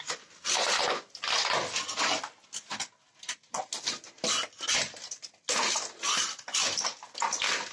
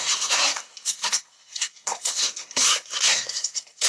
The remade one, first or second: second